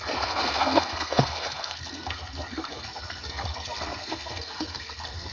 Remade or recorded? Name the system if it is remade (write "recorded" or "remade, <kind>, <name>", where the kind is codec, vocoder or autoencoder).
remade, codec, SNAC